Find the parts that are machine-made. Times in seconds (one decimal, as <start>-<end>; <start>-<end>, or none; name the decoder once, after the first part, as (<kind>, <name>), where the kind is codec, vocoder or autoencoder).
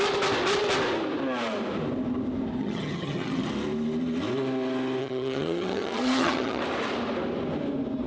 2.6-3.5 (vocoder, HiFi-GAN); 5.0-6.6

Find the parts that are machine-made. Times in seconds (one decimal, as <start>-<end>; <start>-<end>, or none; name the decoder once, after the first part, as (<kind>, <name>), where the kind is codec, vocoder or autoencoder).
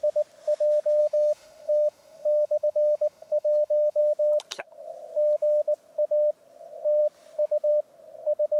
1.0-4.0 (autoencoder, DAC-VAE)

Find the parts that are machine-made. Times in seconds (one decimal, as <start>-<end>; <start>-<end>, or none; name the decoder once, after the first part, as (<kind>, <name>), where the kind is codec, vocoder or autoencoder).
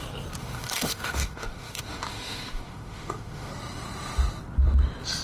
0.4-3.5 (autoencoder, DAC-VAE)